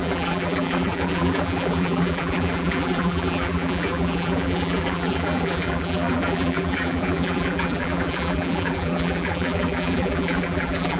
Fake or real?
fake